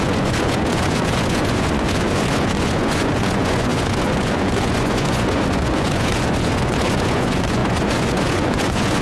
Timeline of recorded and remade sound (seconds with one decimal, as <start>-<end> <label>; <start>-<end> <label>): 0.0-9.0 remade